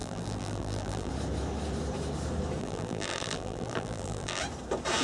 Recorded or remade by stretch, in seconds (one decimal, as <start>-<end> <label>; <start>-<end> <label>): 0.0-1.1 remade; 1.1-2.6 recorded; 2.6-4.4 remade; 4.4-5.0 recorded